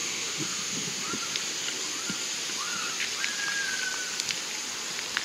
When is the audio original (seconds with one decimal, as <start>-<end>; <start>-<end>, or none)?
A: 1.0-5.2